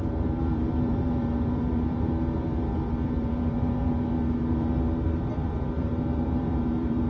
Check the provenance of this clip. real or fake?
fake